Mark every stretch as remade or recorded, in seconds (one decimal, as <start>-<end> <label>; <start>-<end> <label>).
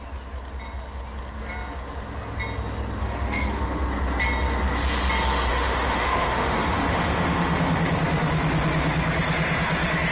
0.0-3.0 recorded; 3.0-3.6 remade; 3.6-5.5 recorded; 5.5-7.9 remade; 7.9-10.1 recorded